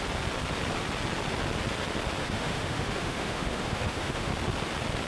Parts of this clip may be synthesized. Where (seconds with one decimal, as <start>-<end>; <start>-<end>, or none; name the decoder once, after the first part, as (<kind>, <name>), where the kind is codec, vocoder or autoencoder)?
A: 2.2-4.3 (autoencoder, DAC-VAE)